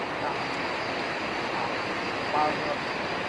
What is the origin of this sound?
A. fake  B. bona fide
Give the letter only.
B